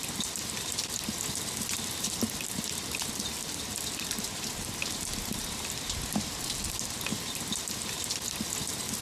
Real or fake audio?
real